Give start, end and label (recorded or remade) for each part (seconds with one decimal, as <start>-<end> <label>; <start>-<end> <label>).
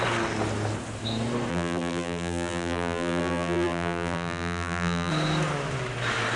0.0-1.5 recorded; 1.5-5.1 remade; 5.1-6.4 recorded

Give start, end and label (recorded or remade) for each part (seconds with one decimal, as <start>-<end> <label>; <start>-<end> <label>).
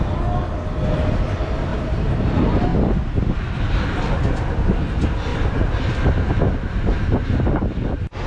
0.0-1.7 recorded; 1.7-2.3 remade; 2.3-5.3 recorded; 5.3-6.1 remade; 6.1-8.3 recorded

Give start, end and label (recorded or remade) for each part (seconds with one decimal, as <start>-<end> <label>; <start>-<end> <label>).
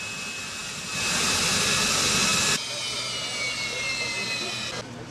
0.0-5.1 recorded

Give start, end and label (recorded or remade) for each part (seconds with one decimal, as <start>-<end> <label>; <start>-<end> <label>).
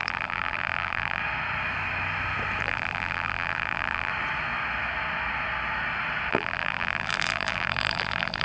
0.0-1.2 remade; 1.2-2.6 recorded; 2.6-4.1 remade; 4.1-6.3 recorded; 6.3-8.4 remade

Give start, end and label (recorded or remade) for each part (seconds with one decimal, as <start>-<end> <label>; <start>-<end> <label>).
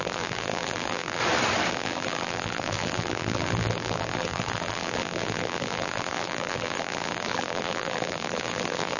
0.0-1.2 remade; 1.2-1.7 recorded; 1.7-9.0 remade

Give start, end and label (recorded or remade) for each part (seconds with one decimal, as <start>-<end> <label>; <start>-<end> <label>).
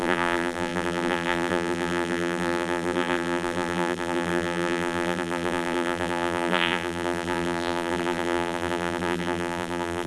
0.0-10.1 remade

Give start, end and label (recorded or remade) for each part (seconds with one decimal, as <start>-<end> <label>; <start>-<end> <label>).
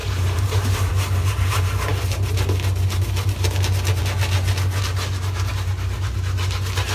0.0-0.9 remade; 0.9-6.9 recorded